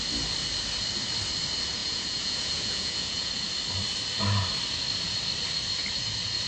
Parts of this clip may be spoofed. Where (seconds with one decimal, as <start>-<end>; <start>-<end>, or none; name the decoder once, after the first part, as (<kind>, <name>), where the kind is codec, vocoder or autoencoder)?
1.8-3.3 (vocoder, Vocos)